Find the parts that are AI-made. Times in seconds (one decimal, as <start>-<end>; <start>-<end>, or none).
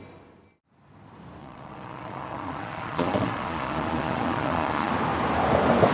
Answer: 1.4-4.9